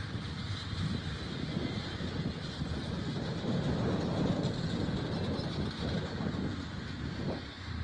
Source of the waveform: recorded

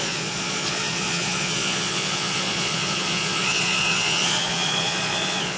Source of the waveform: remade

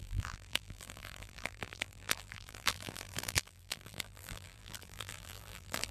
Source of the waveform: remade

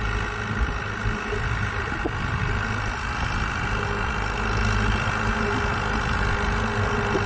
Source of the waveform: recorded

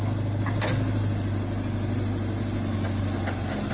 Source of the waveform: recorded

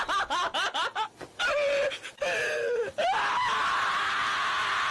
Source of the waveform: recorded